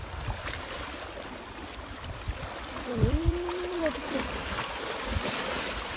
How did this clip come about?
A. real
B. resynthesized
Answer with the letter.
B